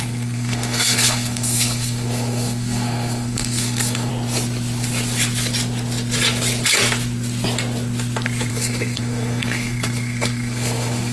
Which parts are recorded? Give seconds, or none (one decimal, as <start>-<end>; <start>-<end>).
4.1-8.5